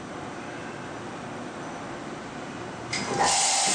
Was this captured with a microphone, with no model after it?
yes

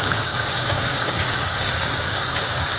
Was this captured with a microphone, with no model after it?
no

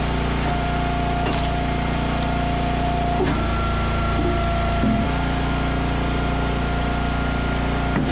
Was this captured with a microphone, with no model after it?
yes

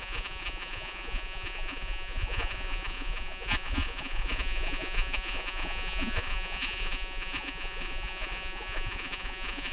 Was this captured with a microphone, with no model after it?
no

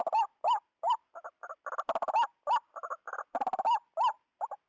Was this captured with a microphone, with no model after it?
yes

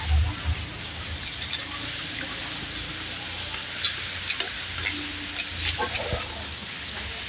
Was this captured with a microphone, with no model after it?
yes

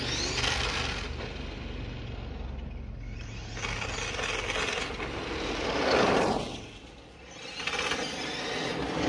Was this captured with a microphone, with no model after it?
yes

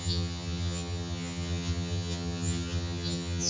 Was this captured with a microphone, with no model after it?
no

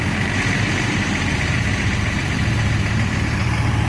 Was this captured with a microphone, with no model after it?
no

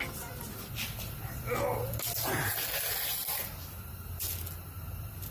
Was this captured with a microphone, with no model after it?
yes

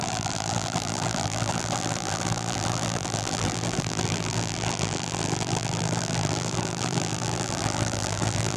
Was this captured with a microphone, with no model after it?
no